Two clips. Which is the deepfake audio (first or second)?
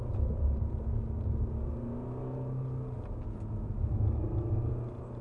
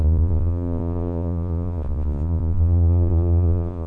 second